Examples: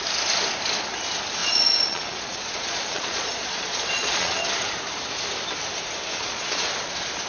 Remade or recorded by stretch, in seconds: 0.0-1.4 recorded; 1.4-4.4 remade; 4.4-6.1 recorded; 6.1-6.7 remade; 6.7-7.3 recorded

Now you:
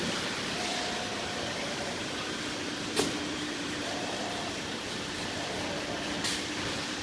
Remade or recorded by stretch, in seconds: 0.0-0.7 recorded; 0.7-4.9 remade; 4.9-7.0 recorded

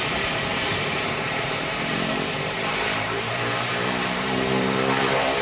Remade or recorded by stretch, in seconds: 0.0-5.4 remade